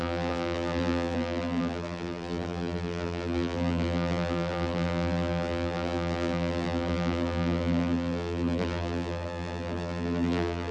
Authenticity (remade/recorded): remade